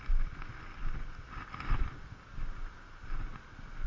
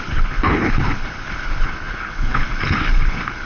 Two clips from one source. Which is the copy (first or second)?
second